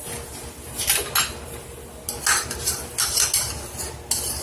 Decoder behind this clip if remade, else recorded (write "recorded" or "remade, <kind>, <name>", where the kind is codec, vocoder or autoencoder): recorded